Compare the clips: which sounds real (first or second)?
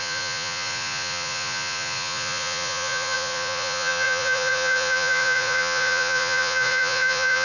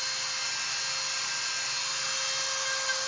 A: second